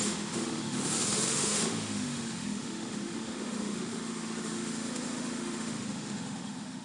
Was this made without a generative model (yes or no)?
no